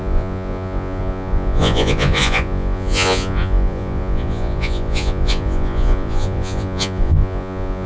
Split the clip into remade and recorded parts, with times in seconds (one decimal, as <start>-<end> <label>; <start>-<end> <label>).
0.0-7.9 remade